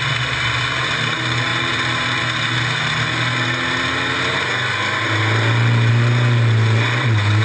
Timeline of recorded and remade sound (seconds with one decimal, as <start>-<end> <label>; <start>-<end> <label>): 0.0-7.4 recorded